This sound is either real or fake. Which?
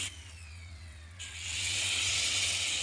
fake